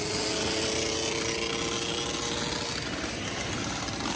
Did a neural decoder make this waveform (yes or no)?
no